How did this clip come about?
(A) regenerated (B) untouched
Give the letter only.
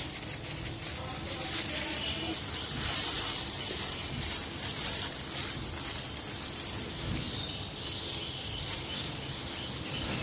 A